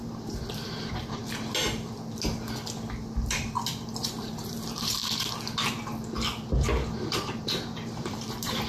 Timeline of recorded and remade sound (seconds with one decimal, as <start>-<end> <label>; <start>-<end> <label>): 0.0-1.2 remade; 1.2-4.0 recorded; 4.0-5.0 remade; 5.0-6.9 recorded; 6.9-8.7 remade